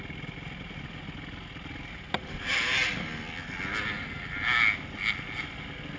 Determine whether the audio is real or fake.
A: real